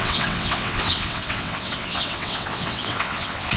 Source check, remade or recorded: remade